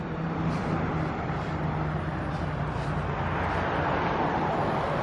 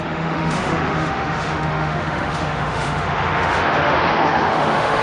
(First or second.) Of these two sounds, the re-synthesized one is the second